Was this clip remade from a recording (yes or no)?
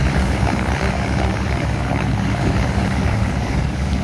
yes